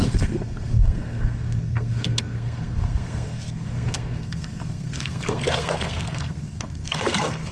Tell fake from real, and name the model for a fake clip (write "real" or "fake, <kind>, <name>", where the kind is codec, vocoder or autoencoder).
fake, codec, SNAC